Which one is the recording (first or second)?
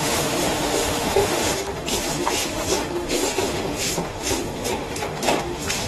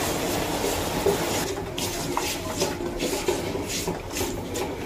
second